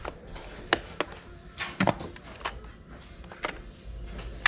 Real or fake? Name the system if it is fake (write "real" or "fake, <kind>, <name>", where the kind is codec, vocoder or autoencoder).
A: real